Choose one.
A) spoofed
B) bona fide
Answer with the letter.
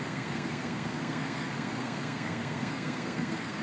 A